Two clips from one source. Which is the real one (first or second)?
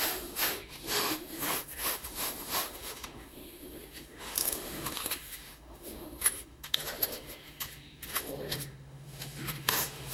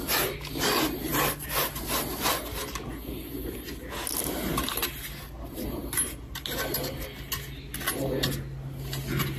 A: second